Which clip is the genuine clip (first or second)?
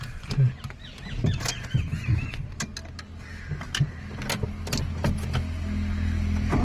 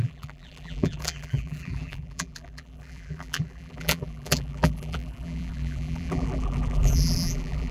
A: first